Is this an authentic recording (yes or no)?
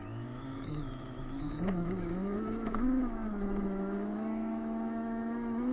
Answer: no